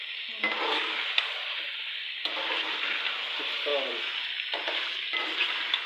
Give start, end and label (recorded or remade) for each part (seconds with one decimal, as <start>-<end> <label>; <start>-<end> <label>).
0.0-5.9 recorded